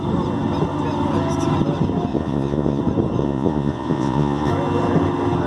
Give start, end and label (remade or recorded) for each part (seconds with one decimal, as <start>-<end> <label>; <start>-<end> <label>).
0.0-2.1 recorded; 2.1-2.8 remade; 2.8-3.2 recorded; 3.2-4.5 remade; 4.5-5.5 recorded